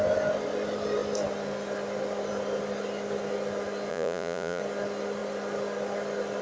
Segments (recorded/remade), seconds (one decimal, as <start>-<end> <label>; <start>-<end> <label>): 0.0-3.9 recorded; 3.9-4.6 remade; 4.6-6.4 recorded